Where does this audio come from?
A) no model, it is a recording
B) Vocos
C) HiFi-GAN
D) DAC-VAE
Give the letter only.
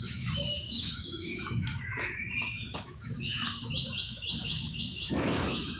D